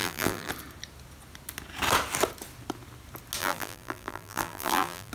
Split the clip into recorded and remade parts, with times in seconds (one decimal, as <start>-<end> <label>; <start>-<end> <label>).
0.0-0.5 remade; 0.5-3.4 recorded; 3.4-5.1 remade